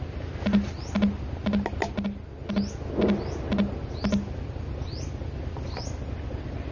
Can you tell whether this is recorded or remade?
recorded